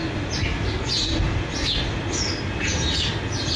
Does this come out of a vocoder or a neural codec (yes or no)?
no